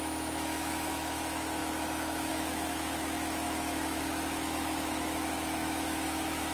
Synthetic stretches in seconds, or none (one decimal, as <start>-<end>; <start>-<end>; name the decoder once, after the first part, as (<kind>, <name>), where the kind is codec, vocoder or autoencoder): 0.0-6.5 (autoencoder, DAC-VAE)